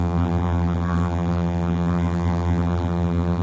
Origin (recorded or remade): remade